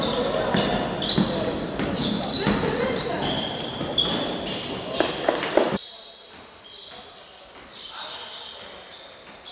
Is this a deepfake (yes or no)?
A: no